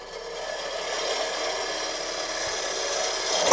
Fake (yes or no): no